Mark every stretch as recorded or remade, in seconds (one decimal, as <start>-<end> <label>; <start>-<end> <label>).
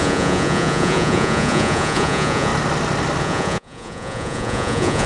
0.0-2.5 remade; 2.5-3.2 recorded; 3.2-5.1 remade